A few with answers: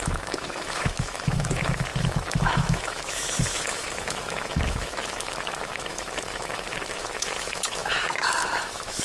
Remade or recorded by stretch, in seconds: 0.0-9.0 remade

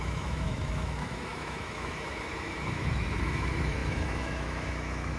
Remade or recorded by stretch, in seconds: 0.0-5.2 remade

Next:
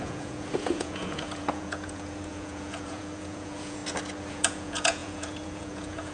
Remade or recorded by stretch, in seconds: 0.0-3.8 remade; 3.8-4.3 recorded; 4.3-6.1 remade